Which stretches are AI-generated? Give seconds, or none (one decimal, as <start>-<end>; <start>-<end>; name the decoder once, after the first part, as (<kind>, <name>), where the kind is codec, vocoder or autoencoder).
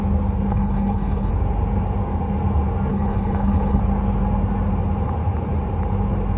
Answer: 0.5-1.3 (codec, HILCodec); 2.9-3.8